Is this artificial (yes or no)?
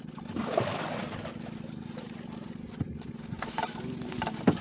no